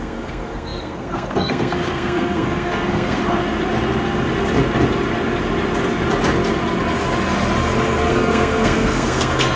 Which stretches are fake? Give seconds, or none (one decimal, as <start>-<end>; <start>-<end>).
0.0-3.2; 8.1-9.6